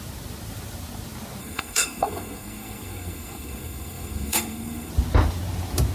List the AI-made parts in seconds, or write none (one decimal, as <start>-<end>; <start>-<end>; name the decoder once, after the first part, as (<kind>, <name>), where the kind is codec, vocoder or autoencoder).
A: 1.4-4.9 (codec, SNAC)